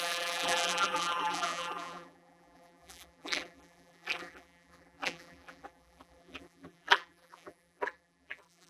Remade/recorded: remade